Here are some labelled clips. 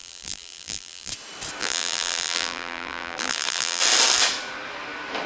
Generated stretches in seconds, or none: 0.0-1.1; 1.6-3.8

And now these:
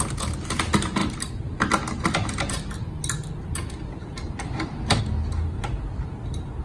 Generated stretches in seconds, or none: 1.0-5.0; 5.4-6.6

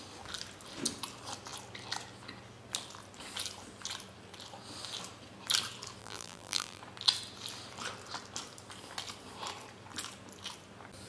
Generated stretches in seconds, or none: 6.0-6.8